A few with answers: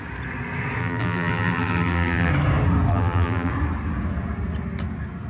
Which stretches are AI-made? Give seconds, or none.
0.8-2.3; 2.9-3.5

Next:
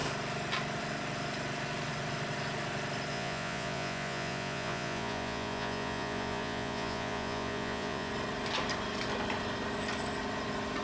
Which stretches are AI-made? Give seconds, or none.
3.1-8.1

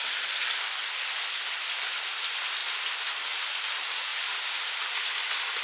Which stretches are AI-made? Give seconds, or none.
none

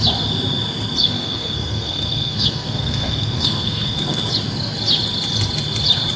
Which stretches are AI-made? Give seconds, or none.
1.0-4.2

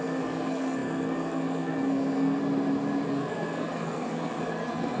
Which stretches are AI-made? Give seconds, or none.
0.0-2.4; 3.1-5.0

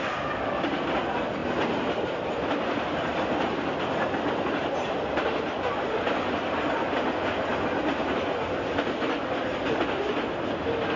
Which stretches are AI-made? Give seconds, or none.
none